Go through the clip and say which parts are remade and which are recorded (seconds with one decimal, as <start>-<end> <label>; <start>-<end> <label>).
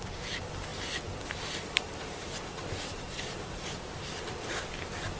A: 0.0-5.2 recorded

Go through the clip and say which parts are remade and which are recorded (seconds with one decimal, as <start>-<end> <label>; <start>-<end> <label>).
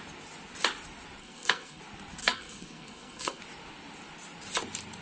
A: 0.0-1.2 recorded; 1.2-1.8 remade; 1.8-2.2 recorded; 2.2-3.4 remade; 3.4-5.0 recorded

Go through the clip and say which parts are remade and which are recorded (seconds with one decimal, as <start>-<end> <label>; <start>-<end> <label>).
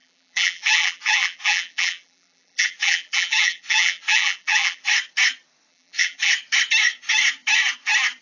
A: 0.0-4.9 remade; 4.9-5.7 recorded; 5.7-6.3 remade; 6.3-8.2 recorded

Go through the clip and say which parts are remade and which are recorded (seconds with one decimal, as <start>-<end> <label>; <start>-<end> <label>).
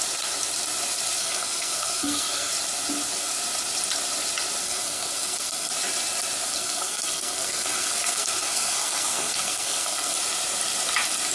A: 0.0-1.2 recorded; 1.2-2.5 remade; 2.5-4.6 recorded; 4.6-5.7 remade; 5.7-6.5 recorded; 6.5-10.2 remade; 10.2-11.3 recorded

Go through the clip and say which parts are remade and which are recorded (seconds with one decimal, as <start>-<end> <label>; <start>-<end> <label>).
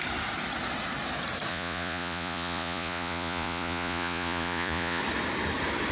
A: 0.0-1.5 recorded; 1.5-5.0 remade; 5.0-5.9 recorded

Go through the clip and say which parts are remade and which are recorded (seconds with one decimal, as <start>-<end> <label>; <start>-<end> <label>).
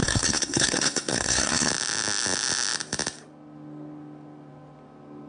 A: 0.0-1.7 remade; 1.7-5.3 recorded